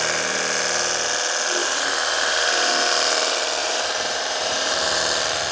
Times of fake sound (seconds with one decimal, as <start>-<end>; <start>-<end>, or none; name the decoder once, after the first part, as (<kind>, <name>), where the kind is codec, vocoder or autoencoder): 1.6-2.7 (vocoder, BigVGAN v2); 3.6-5.0